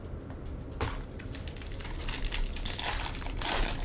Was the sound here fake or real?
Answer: real